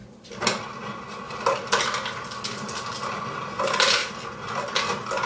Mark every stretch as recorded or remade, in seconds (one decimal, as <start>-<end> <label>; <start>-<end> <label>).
0.0-5.3 recorded

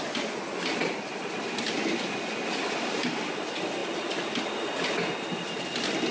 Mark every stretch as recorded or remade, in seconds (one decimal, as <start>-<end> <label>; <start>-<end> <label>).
0.0-6.1 recorded

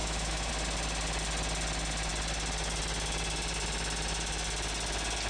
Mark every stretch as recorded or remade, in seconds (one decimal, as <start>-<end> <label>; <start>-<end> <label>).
0.0-0.5 remade; 0.5-5.3 recorded

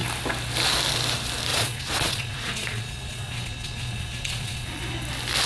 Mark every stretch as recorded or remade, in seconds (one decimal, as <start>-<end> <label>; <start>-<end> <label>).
0.0-1.5 recorded; 1.5-4.8 remade; 4.8-5.5 recorded

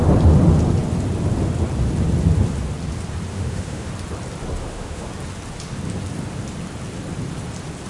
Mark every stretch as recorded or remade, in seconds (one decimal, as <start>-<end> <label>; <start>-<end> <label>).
0.0-3.3 recorded; 3.3-3.9 remade; 3.9-4.6 recorded; 4.6-5.1 remade; 5.1-7.9 recorded

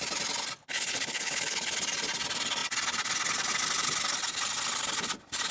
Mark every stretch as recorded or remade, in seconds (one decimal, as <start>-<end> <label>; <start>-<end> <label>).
0.0-0.6 recorded; 0.6-1.7 remade; 1.7-5.5 recorded